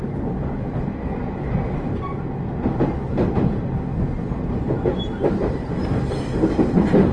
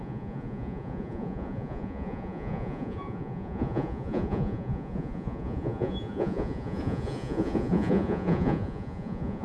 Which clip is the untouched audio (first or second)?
first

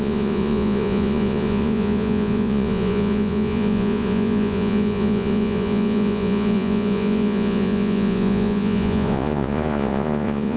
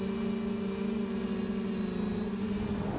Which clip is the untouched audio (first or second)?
second